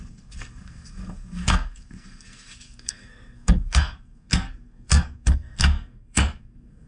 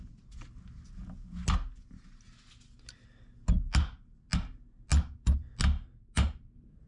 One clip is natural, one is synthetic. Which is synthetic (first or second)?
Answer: first